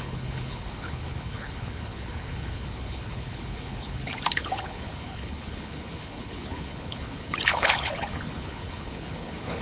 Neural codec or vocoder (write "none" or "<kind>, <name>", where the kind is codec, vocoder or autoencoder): codec, HILCodec